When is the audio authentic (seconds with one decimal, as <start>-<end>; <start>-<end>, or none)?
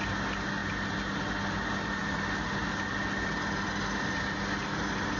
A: 0.0-5.2